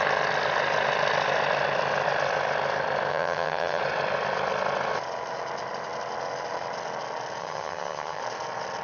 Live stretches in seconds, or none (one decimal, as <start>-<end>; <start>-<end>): 0.0-3.1; 3.8-7.4; 8.2-8.8